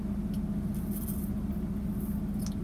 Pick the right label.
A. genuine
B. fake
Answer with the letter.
A